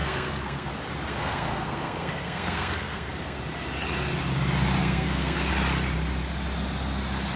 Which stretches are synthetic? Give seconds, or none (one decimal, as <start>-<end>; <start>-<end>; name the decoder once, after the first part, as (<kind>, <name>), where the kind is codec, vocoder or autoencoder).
0.0-0.7 (codec, SNAC); 1.1-3.4; 4.8-5.5